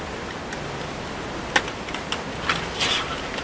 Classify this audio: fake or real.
real